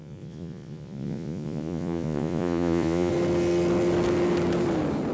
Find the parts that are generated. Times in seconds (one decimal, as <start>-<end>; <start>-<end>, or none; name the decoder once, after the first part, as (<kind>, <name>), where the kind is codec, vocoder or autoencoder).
0.0-3.1 (vocoder, Vocos)